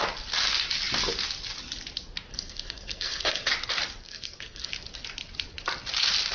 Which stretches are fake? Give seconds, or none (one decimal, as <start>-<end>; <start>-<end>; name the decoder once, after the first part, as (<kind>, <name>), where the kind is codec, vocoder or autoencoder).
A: 2.3-3.5 (codec, SNAC); 4.0-4.7